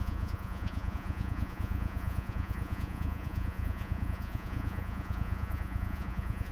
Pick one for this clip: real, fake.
fake